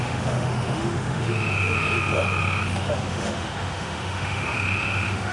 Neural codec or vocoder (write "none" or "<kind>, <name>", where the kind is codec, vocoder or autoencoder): autoencoder, DAC-VAE